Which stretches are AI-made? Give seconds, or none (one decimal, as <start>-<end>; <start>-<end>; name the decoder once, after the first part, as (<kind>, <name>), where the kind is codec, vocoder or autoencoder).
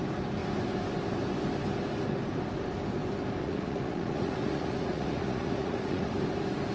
3.4-6.1 (vocoder, Vocos)